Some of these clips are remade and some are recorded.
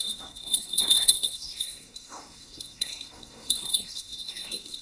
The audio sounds remade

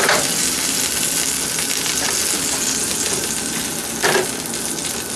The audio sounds recorded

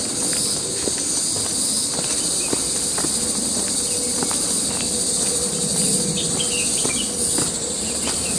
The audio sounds recorded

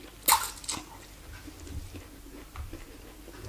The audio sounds recorded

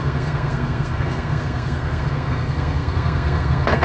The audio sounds remade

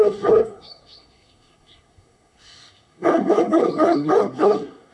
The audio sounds remade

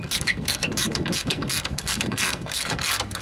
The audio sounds remade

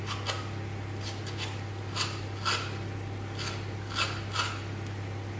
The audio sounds recorded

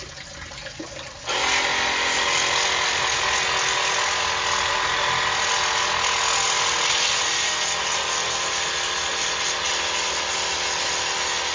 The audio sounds recorded